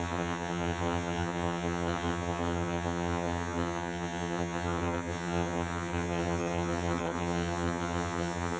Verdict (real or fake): fake